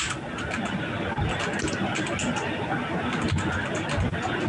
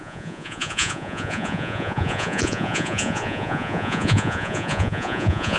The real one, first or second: first